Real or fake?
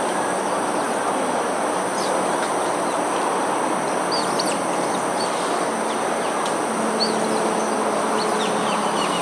real